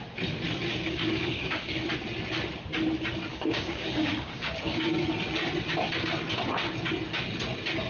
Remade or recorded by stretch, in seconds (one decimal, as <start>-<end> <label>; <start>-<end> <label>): 0.0-0.7 recorded; 0.7-1.9 remade; 1.9-3.3 recorded; 3.3-5.0 remade; 5.0-7.9 recorded